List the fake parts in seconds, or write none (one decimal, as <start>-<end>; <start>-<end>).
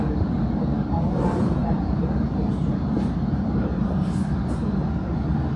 1.6-3.9